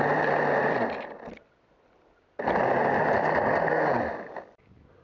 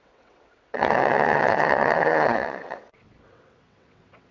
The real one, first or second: first